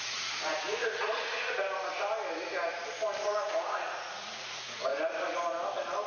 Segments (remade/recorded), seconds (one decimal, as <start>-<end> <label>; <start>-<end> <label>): 0.0-1.6 remade; 1.6-3.2 recorded; 3.2-4.9 remade; 4.9-6.1 recorded